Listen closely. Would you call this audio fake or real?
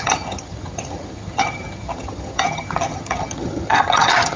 fake